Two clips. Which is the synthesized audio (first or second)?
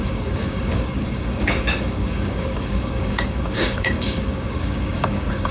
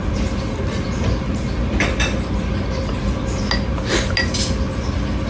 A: first